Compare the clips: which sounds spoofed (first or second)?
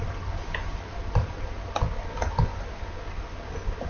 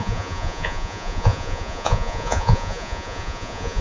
second